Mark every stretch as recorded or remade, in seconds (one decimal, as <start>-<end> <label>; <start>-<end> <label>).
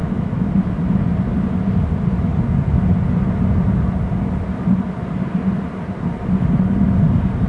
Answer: 0.0-0.5 remade; 0.5-7.5 recorded